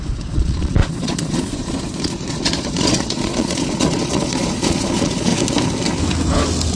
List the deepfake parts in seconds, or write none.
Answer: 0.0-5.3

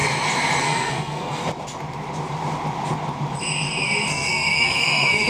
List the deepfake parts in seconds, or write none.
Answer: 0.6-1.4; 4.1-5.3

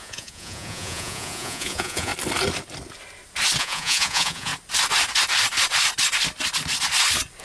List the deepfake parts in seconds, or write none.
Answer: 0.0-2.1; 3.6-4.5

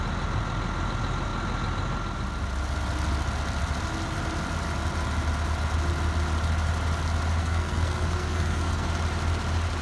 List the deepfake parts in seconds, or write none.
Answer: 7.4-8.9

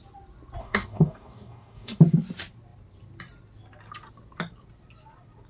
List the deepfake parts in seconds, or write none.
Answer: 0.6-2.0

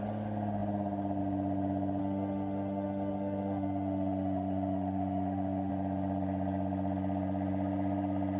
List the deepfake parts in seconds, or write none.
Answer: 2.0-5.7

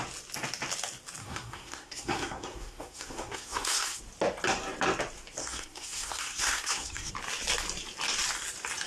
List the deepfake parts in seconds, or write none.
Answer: 1.2-4.0; 5.4-7.1

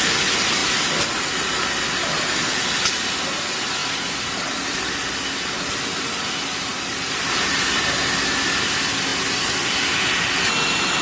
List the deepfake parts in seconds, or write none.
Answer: 0.6-1.1; 3.8-5.1; 6.7-7.2